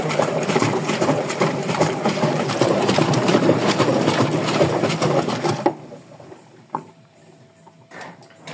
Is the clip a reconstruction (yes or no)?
yes